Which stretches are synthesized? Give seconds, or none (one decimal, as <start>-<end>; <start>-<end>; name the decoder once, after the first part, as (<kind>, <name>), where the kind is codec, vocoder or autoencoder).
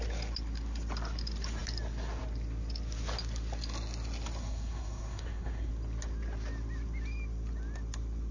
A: 4.4-5.7 (codec, SNAC)